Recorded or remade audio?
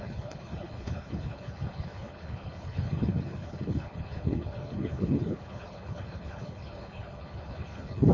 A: remade